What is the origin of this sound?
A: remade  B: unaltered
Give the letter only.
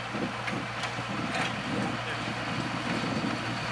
B